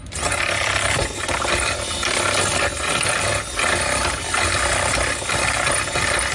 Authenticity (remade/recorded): recorded